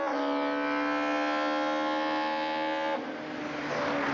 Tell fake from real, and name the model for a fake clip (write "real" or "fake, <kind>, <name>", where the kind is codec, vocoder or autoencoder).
real